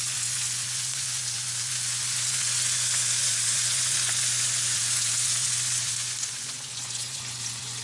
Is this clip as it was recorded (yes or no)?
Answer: no